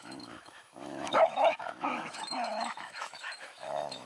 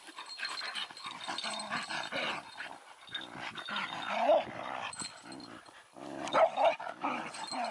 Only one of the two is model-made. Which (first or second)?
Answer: first